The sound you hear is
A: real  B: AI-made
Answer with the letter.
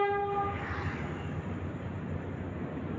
A